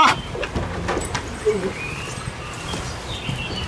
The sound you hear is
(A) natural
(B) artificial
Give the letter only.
A